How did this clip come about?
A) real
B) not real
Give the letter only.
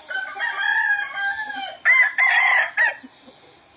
A